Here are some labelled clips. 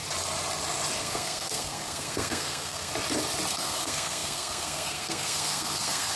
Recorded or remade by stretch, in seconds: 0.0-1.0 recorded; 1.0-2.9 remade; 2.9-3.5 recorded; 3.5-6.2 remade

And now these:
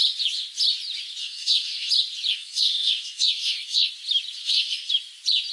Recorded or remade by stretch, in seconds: 0.0-1.2 recorded; 1.2-1.9 remade; 1.9-2.3 recorded; 2.3-3.9 remade; 3.9-4.4 recorded; 4.4-4.9 remade; 4.9-5.5 recorded

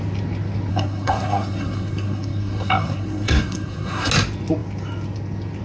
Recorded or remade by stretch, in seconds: 0.0-0.7 recorded; 0.7-4.1 remade; 4.1-5.6 recorded

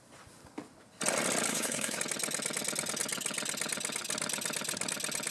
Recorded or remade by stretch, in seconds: 0.0-1.5 recorded; 1.5-2.0 remade; 2.0-5.3 recorded

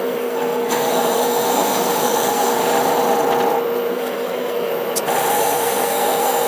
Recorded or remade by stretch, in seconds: 0.0-2.6 remade; 2.6-3.9 recorded; 3.9-4.7 remade; 4.7-5.3 recorded; 5.3-6.5 remade

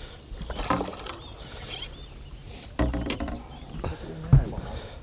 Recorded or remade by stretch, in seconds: 0.0-5.0 recorded

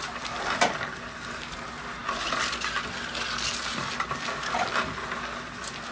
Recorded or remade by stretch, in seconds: 0.0-5.9 recorded

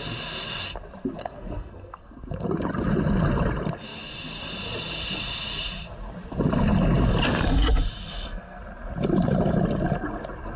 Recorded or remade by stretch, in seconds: 0.0-1.2 recorded; 1.2-2.1 remade; 2.1-8.1 recorded; 8.1-8.6 remade; 8.6-10.6 recorded